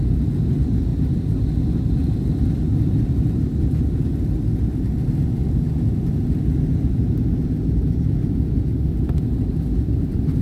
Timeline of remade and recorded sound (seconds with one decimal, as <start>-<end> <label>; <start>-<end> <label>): 0.0-10.4 recorded